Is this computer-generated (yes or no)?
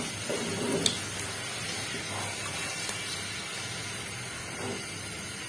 no